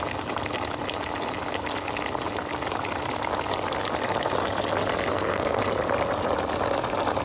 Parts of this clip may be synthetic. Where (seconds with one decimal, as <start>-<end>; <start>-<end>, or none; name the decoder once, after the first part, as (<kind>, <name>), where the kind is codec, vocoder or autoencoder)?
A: 5.1-5.6 (codec, SNAC)